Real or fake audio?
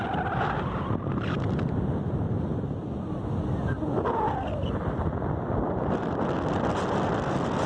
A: real